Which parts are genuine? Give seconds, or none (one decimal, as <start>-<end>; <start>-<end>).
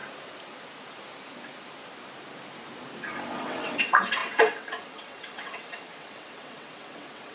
0.0-3.4